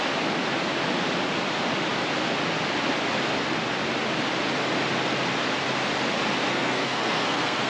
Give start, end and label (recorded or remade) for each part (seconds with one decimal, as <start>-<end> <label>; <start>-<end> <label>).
0.0-6.5 recorded; 6.5-7.7 remade